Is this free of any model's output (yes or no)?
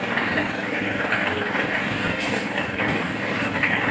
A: no